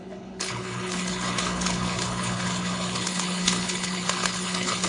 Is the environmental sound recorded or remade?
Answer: remade